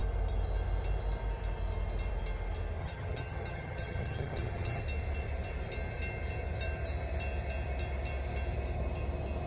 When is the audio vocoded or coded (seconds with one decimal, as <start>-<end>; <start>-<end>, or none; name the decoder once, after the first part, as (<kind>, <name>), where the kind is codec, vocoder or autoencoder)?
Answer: 2.8-4.8 (vocoder, HiFi-GAN)

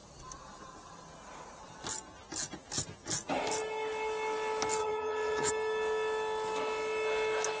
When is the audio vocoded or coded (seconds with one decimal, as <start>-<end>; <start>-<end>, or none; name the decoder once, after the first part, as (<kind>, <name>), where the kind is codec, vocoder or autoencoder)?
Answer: 4.8-5.5 (vocoder, HiFi-GAN)